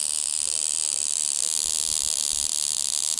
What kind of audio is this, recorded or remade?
recorded